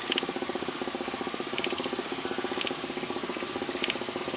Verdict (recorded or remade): recorded